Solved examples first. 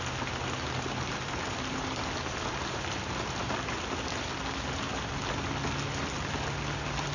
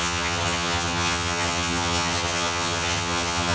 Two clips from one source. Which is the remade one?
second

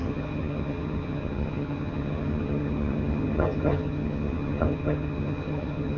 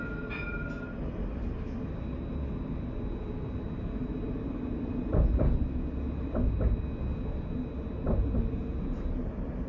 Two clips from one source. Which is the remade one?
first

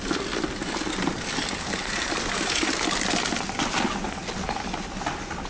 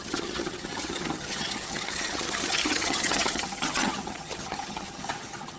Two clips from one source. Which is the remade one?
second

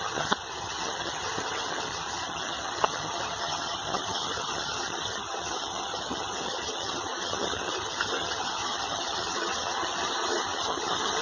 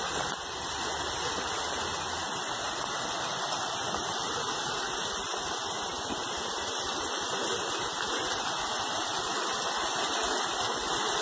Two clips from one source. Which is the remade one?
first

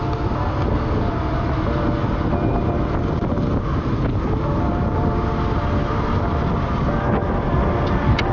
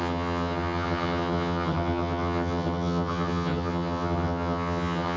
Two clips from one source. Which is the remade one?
second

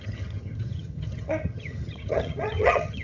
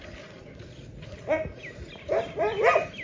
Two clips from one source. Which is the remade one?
first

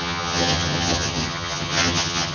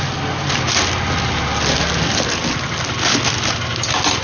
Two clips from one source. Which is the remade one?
first